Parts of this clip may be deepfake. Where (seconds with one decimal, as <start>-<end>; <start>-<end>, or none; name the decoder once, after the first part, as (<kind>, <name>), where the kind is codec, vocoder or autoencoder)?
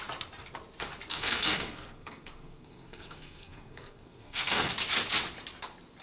1.1-4.7 (codec, SNAC)